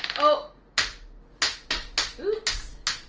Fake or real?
real